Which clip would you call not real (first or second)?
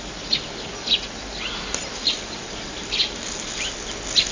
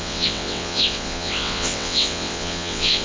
second